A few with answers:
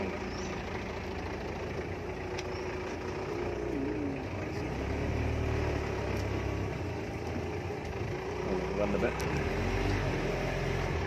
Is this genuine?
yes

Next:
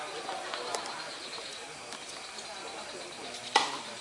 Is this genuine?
yes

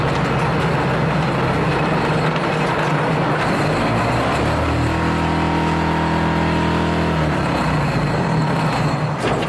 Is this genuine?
yes